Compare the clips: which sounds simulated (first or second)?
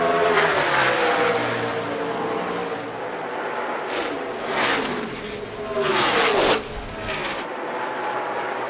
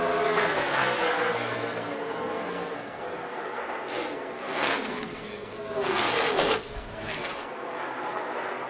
second